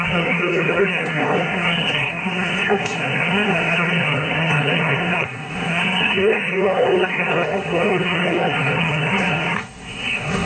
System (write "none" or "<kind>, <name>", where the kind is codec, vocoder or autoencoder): codec, SNAC